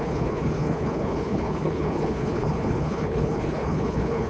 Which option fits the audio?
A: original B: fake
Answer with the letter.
B